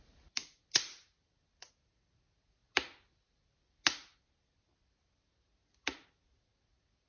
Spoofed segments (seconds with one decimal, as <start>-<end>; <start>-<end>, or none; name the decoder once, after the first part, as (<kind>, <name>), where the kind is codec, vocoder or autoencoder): none